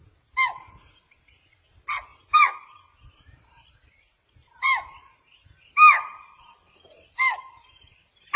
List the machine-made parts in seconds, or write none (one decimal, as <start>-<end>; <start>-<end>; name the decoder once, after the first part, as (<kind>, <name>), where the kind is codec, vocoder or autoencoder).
2.1-6.4 (vocoder, BigVGAN v2)